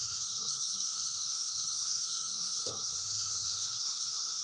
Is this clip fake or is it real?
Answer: fake